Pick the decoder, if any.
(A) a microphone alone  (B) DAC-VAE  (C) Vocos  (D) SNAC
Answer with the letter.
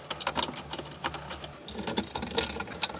A